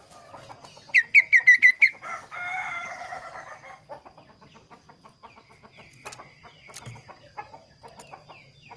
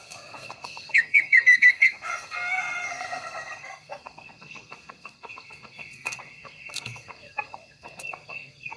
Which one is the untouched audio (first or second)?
first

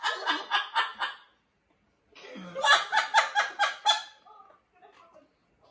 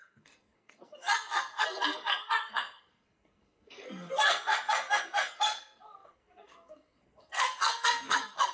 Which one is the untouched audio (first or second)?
first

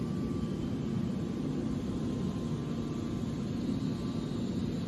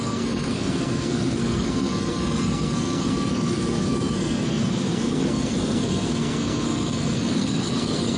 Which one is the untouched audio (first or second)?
first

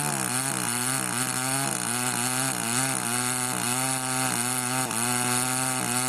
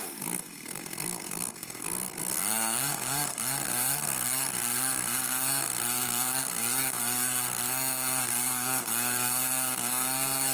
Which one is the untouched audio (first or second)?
first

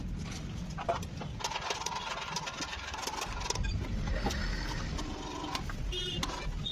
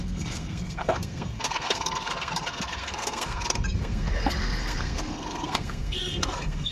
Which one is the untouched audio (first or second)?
first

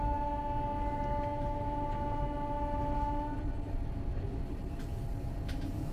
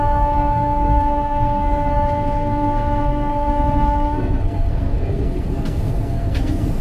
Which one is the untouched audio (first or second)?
first